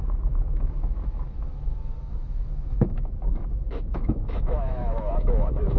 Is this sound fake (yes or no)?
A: yes